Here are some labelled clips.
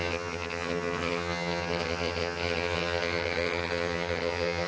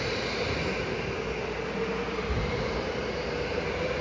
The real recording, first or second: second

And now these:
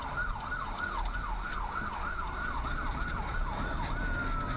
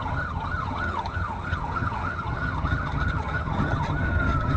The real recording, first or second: first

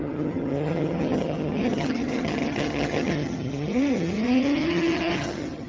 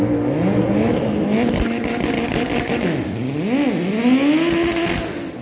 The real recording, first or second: second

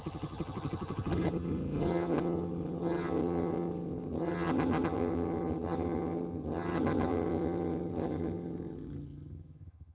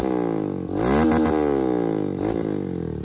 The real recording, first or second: second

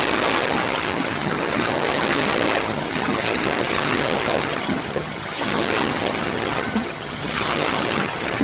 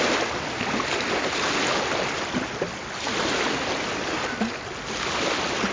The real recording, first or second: second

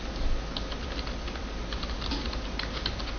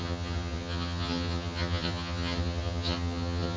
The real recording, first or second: first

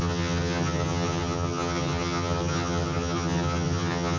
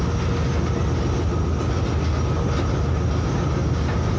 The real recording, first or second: second